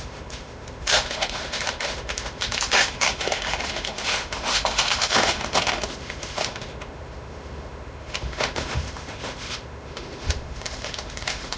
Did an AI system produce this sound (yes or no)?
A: yes